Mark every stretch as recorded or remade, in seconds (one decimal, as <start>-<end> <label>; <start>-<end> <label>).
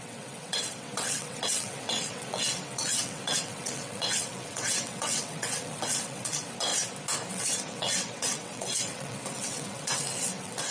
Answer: 0.0-6.7 remade; 6.7-7.3 recorded; 7.3-10.7 remade